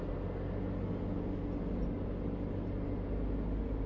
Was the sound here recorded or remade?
recorded